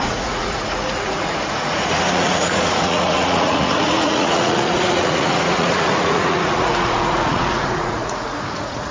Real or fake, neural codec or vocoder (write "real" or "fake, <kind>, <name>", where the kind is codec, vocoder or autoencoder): fake, vocoder, Vocos